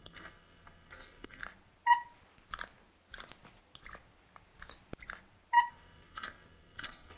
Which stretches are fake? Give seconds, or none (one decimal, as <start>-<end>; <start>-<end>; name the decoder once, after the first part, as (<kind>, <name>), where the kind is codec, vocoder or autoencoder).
0.0-1.4 (codec, SNAC); 5.7-7.2